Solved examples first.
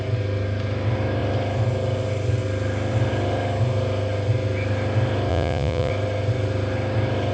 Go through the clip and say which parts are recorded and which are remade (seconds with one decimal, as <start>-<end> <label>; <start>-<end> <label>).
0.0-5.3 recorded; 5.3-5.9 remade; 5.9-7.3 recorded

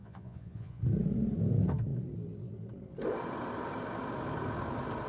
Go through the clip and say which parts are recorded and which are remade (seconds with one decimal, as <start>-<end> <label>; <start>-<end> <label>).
0.0-0.8 remade; 0.8-5.1 recorded

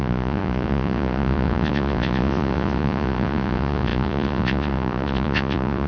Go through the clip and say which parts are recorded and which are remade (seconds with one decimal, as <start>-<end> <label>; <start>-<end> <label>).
0.0-5.9 remade

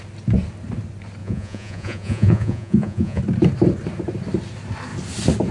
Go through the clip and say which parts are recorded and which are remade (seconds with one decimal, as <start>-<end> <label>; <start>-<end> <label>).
0.0-1.2 recorded; 1.2-3.2 remade; 3.2-5.5 recorded

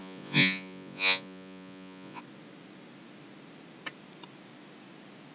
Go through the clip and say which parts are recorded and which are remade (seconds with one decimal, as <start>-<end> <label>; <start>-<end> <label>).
0.0-2.2 remade; 2.2-5.3 recorded

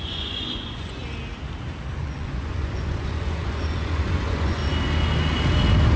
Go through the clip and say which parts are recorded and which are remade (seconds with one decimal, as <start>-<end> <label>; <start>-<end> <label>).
0.0-1.0 remade; 1.0-2.0 recorded; 2.0-4.6 remade; 4.6-6.0 recorded

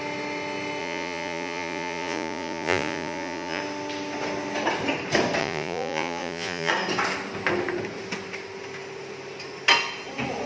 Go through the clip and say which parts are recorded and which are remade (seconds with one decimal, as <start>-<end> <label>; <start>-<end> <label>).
0.0-0.8 recorded; 0.8-3.6 remade; 3.6-5.4 recorded; 5.4-6.7 remade; 6.7-10.5 recorded

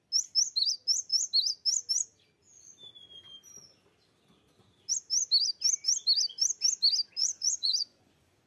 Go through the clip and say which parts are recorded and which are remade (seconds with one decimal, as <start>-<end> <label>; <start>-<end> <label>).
0.0-7.2 recorded; 7.2-8.5 remade